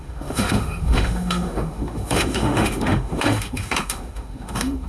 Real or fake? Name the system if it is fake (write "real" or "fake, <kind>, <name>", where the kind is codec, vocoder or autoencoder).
fake, autoencoder, DAC-VAE